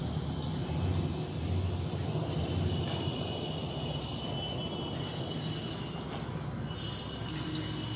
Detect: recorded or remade recorded